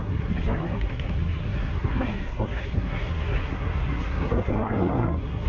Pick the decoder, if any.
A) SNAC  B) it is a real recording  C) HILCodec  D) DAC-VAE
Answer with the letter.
A